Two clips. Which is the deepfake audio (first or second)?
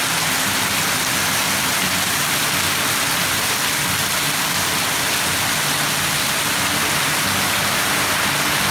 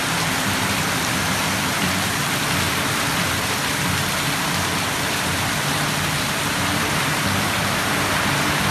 second